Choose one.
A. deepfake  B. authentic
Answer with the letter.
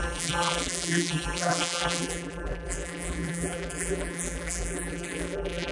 A